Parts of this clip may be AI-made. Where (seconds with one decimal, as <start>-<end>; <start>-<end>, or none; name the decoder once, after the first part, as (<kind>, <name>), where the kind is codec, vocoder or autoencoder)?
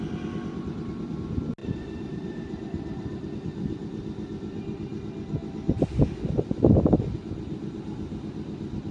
1.6-3.3 (vocoder, BigVGAN v2)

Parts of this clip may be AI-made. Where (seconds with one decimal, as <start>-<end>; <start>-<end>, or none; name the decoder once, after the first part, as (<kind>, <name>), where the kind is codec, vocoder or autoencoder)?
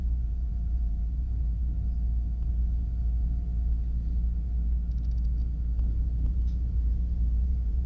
0.0-1.6 (vocoder, BigVGAN v2); 6.3-7.9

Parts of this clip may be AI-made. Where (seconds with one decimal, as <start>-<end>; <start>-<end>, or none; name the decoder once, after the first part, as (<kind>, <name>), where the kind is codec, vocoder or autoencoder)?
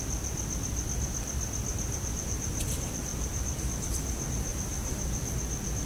1.7-2.5 (vocoder, BigVGAN v2); 3.1-3.6; 4.5-5.2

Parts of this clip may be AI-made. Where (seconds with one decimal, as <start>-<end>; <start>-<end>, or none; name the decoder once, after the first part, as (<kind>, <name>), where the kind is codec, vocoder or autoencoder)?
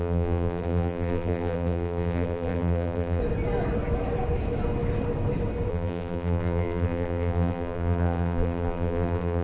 0.0-3.2 (vocoder, BigVGAN v2); 5.7-9.4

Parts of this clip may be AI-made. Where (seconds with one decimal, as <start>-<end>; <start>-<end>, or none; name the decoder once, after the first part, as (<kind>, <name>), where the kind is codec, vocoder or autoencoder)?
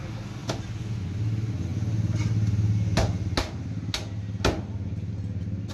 none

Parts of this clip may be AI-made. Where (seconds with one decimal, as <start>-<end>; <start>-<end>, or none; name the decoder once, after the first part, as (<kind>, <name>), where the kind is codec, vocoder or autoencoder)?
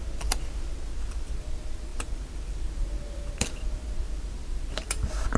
1.9-5.4 (vocoder, BigVGAN v2)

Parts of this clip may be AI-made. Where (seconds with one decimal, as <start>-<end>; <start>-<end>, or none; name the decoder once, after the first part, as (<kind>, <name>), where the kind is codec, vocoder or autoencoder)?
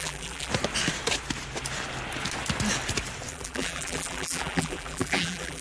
0.0-0.5 (vocoder, BigVGAN v2); 3.3-5.6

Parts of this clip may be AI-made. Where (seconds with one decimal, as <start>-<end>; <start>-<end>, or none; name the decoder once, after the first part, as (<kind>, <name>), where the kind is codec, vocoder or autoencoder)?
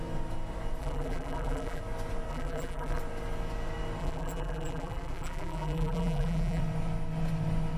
0.8-1.8 (vocoder, BigVGAN v2); 2.3-3.0; 4.0-6.6